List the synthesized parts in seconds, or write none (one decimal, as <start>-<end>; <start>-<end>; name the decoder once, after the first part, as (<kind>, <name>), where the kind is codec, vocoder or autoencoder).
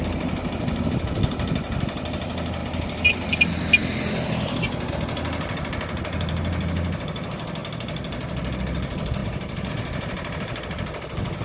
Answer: 9.2-9.7 (vocoder, BigVGAN v2)